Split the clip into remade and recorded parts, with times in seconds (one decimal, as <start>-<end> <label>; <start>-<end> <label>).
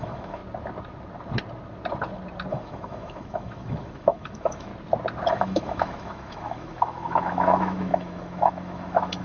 0.0-0.4 remade; 0.4-2.5 recorded; 2.5-4.7 remade; 4.7-5.3 recorded; 5.3-9.2 remade